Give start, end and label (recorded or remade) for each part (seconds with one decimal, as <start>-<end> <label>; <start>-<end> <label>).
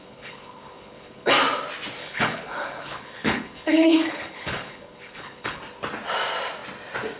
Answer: 0.0-1.3 remade; 1.3-2.0 recorded; 2.0-5.6 remade; 5.6-7.2 recorded